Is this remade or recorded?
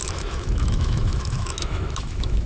remade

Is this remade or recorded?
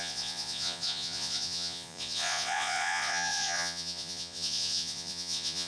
remade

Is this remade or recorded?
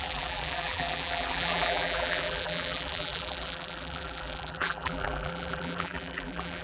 remade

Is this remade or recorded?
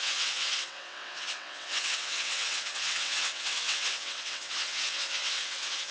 remade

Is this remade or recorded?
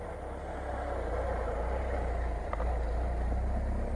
recorded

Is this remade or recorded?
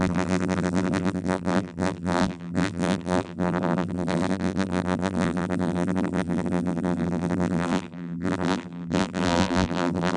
remade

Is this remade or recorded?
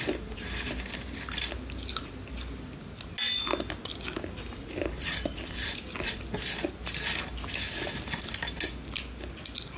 recorded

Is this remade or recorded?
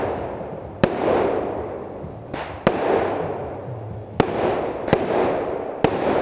recorded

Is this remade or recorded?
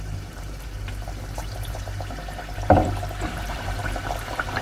remade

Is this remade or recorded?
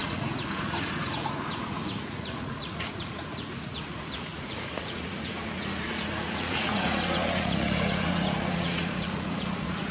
remade